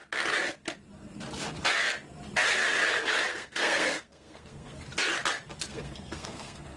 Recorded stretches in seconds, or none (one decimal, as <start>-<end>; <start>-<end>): 0.0-3.3; 4.8-5.7